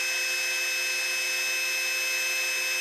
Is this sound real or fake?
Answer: real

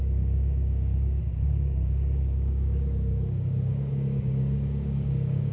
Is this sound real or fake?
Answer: fake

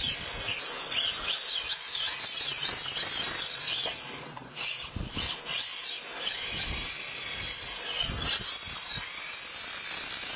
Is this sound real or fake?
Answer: real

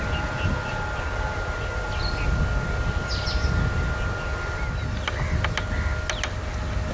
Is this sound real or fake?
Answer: real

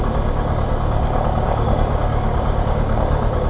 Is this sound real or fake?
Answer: fake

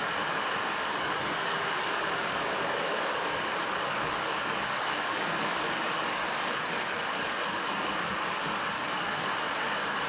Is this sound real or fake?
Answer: fake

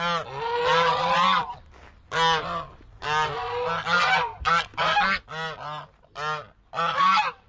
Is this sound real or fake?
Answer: real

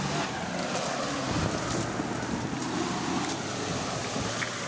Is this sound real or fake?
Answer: real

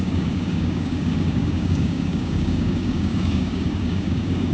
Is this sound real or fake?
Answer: fake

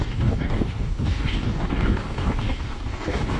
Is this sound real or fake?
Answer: fake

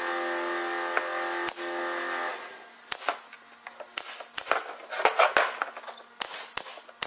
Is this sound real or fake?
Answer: real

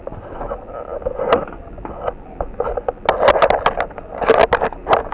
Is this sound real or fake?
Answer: real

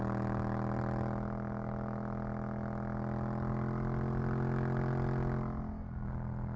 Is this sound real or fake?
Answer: real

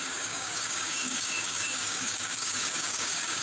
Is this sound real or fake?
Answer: fake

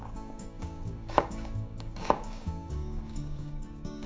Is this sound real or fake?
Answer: fake